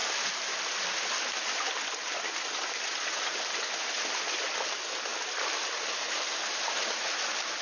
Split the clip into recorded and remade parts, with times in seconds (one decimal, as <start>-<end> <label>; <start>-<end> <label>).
0.0-7.6 recorded